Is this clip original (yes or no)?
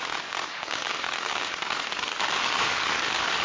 no